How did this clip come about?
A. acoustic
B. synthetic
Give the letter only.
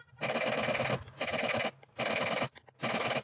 A